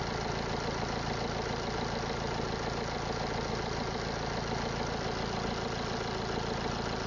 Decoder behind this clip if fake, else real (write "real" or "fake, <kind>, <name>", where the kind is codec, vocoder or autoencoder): real